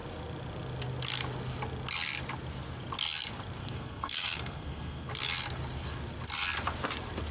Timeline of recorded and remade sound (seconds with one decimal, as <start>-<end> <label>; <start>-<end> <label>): 0.0-3.6 recorded; 3.6-5.1 remade; 5.1-7.3 recorded